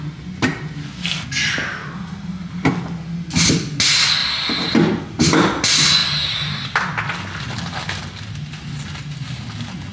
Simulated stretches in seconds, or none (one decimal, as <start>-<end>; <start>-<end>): none